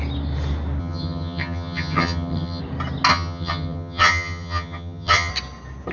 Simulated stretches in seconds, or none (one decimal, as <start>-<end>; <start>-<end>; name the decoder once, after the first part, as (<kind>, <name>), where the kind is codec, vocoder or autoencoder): 0.8-2.6 (vocoder, HiFi-GAN); 3.1-5.3